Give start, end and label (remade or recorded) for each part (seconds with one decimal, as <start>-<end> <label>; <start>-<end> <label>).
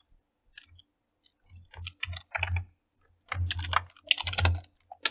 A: 0.0-5.1 recorded